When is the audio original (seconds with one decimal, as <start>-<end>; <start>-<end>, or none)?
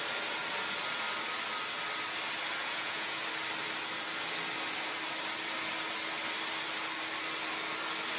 0.0-2.6; 3.2-8.2